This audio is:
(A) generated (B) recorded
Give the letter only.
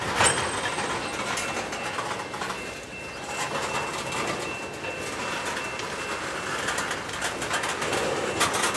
B